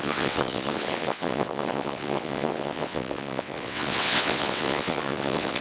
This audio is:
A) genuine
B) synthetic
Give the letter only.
B